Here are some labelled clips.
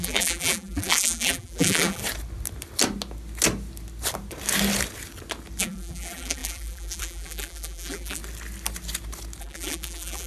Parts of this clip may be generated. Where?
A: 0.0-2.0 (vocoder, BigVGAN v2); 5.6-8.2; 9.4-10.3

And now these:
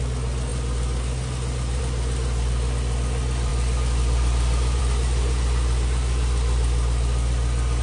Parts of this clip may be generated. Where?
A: none

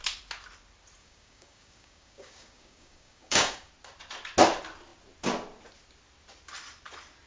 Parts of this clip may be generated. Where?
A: 1.0-3.7 (codec, DAC)

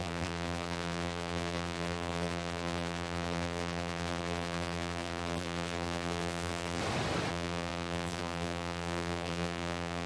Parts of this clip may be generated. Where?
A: 0.0-6.8 (vocoder, BigVGAN v2); 7.3-10.1